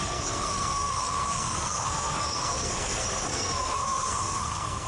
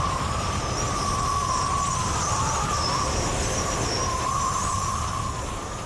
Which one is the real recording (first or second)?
second